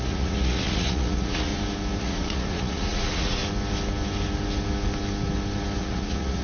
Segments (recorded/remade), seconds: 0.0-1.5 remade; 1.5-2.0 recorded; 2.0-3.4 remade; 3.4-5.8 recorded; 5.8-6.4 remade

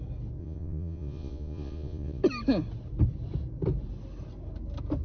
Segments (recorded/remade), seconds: 0.0-0.4 recorded; 0.4-2.2 remade; 2.2-5.0 recorded